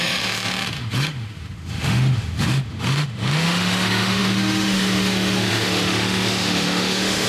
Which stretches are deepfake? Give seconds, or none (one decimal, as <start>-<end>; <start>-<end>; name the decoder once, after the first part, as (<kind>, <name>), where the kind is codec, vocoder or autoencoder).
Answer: 0.0-7.3 (autoencoder, DAC-VAE)